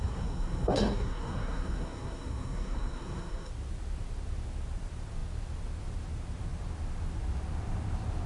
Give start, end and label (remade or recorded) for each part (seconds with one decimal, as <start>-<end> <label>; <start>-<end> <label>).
0.0-3.5 remade; 3.5-8.3 recorded